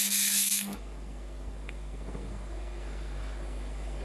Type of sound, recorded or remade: remade